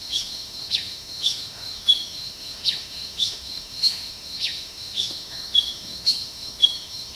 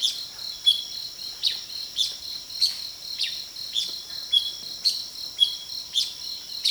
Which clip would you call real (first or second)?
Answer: second